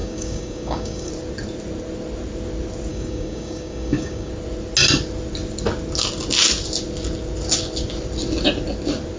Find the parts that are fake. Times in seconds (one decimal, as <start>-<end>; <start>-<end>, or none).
0.0-1.1; 2.9-4.3